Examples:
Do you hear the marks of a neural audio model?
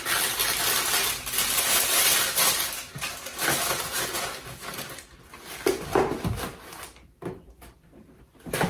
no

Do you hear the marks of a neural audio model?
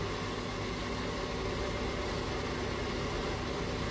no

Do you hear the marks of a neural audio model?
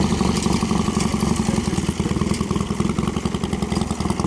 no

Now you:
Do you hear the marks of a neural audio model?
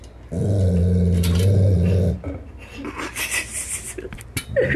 no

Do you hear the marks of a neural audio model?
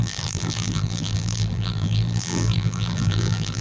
yes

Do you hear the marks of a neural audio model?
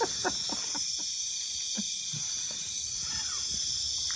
yes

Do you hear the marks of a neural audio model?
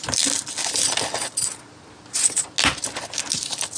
no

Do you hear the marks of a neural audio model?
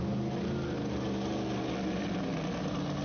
no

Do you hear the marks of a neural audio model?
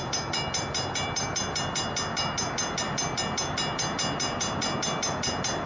no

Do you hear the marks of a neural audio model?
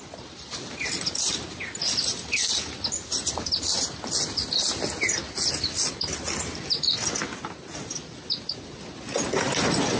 no